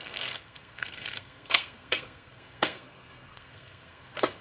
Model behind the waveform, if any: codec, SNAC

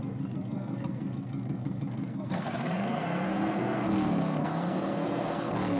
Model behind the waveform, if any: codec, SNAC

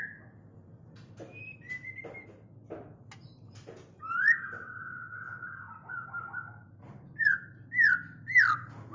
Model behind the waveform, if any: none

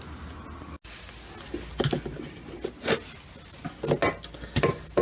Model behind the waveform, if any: none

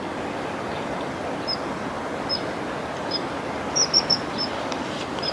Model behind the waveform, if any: none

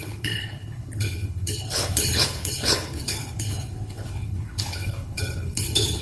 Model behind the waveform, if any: codec, HILCodec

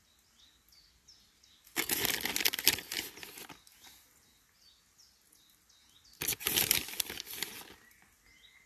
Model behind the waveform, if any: none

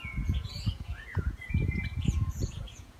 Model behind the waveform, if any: vocoder, Vocos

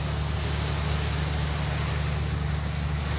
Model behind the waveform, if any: none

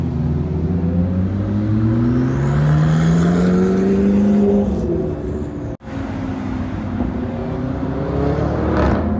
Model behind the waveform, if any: none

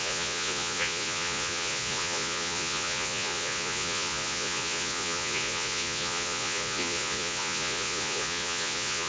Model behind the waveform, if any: vocoder, Vocos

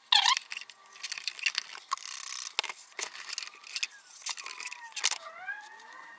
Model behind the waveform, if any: none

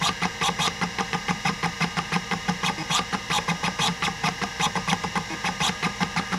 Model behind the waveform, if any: vocoder, BigVGAN v2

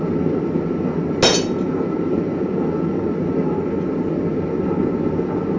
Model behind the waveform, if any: none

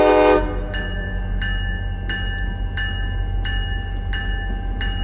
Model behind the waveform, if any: none